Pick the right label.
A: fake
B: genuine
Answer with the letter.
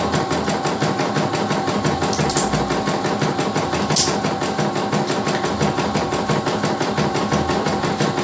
B